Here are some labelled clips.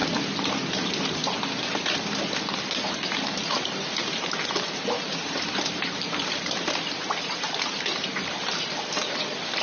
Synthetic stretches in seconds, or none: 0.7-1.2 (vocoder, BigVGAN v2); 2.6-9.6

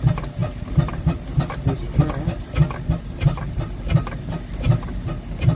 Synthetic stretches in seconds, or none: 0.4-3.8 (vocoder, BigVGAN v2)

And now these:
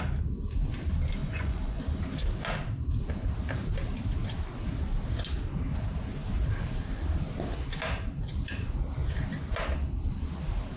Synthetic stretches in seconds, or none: 1.2-1.8 (vocoder, Vocos)